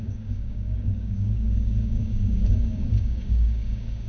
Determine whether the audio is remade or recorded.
remade